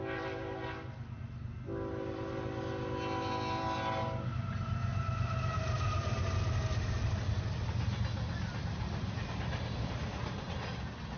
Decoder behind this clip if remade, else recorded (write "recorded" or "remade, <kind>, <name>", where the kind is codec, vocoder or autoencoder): recorded